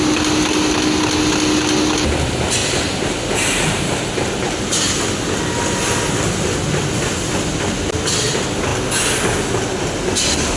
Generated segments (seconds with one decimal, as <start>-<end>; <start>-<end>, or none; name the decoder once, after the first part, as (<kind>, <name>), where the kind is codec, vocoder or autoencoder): 2.6-4.3 (vocoder, BigVGAN v2)